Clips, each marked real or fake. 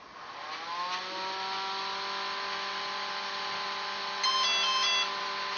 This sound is real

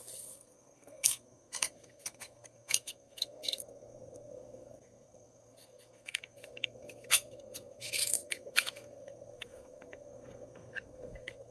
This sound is fake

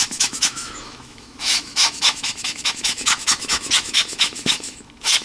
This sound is fake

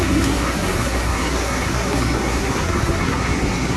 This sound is fake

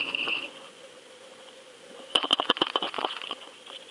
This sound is fake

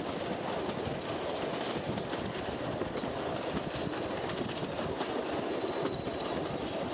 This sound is real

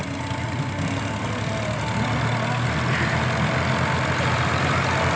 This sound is real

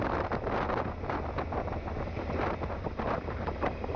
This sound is fake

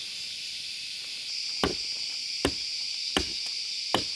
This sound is real